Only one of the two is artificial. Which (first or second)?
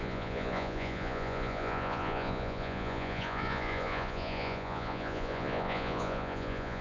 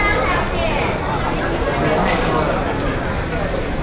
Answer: first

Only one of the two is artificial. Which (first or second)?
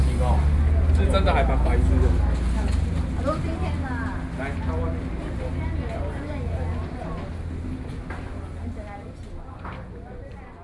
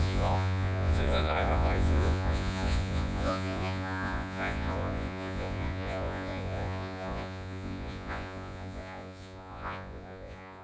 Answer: second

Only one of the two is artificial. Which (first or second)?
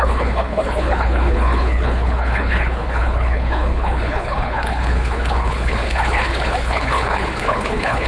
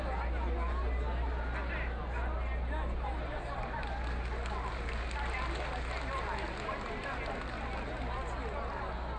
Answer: first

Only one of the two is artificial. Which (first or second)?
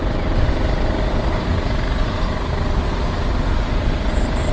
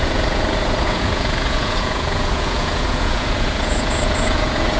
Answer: second